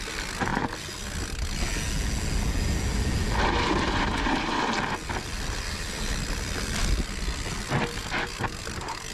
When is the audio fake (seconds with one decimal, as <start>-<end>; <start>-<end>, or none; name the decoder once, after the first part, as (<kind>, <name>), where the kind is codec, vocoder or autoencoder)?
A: 0.0-0.5 (vocoder, BigVGAN v2); 5.1-8.0; 8.6-9.1